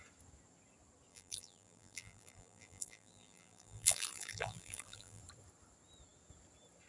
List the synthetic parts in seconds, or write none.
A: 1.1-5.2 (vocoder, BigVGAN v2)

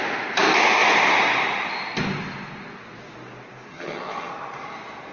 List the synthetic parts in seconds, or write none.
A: 3.7-4.3 (vocoder, HiFi-GAN)

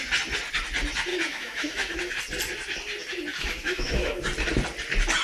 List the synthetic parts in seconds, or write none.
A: 1.1-2.2 (autoencoder, DAC-VAE); 3.3-4.2

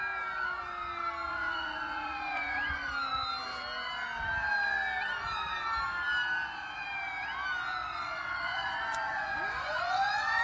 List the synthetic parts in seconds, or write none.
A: 1.3-2.9 (vocoder, Vocos); 7.8-10.4

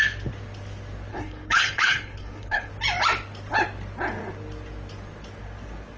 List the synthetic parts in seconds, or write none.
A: 1.1-2.7 (codec, HILCodec)